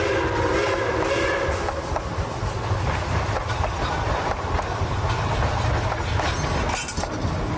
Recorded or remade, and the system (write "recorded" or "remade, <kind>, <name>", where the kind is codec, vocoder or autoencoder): recorded